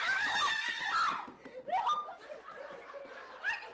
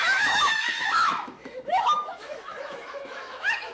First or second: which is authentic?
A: first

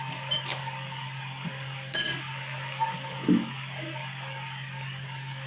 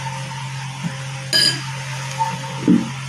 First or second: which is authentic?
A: second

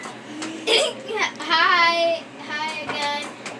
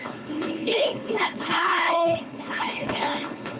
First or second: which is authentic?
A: first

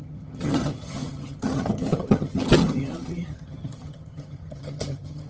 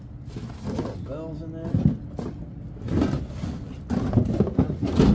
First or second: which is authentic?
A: second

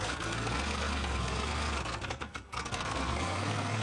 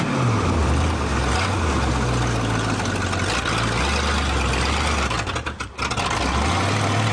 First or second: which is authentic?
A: second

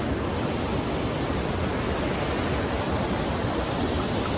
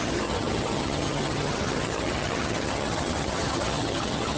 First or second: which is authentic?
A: first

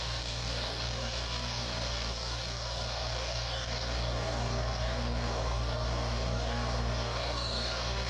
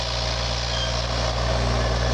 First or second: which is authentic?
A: second